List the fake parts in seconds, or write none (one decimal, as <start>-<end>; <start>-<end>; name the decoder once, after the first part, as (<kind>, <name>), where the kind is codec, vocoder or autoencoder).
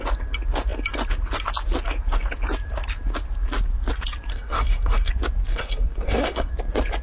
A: 4.3-5.1 (codec, SNAC); 5.5-6.5